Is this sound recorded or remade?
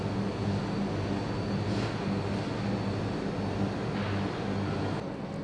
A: recorded